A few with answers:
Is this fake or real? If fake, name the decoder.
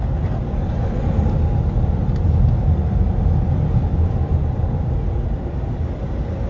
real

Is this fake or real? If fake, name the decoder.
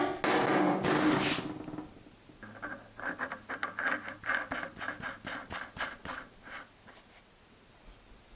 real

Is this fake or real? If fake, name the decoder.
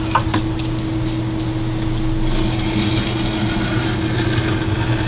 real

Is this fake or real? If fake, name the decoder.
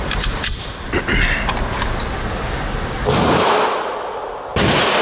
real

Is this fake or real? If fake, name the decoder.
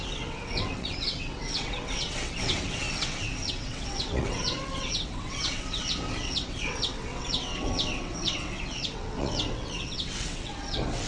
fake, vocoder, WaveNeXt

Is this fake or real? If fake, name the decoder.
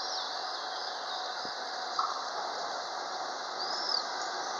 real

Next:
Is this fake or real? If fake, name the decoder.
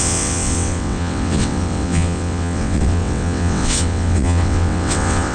fake, vocoder, WaveNeXt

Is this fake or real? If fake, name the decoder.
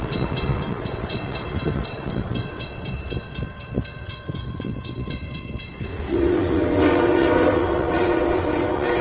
fake, vocoder, WaveNeXt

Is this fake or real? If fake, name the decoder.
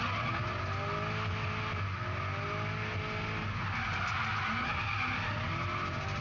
real